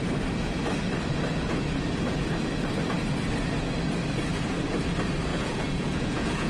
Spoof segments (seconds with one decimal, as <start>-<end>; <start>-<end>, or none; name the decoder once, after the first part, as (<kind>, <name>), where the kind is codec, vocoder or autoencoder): 5.3-6.5 (vocoder, Vocos)